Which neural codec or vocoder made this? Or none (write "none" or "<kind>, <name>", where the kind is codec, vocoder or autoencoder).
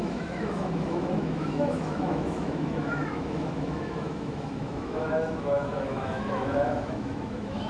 autoencoder, DAC-VAE